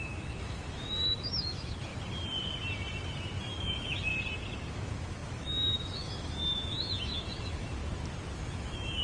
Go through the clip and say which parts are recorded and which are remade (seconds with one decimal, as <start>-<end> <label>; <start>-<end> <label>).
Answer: 0.0-1.9 remade; 1.9-3.4 recorded; 3.4-4.1 remade; 4.1-4.7 recorded; 4.7-7.8 remade; 7.8-8.3 recorded; 8.3-9.0 remade